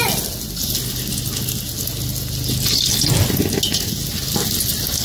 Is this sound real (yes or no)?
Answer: yes